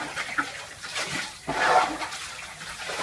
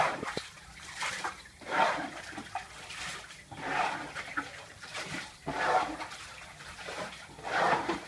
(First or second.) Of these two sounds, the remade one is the second